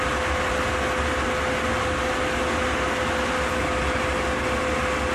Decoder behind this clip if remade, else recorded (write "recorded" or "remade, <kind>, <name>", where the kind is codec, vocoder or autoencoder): recorded